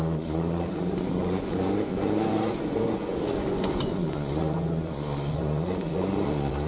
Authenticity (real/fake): fake